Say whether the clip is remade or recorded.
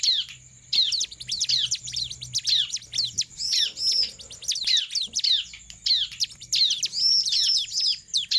recorded